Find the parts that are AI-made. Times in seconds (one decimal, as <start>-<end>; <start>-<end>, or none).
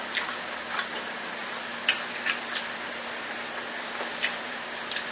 1.4-4.5